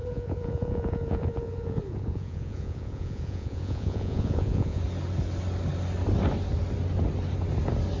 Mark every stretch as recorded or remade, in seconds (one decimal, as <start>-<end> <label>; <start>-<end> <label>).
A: 0.0-4.8 remade; 4.8-8.0 recorded